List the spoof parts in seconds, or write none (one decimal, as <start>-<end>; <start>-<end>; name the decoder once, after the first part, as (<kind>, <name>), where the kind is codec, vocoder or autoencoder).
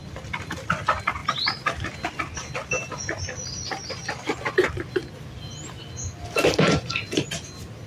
none